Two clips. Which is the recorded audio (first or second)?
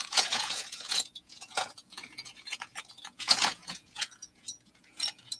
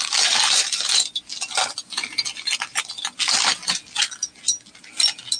second